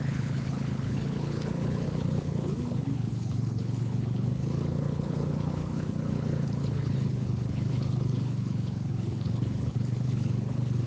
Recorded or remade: remade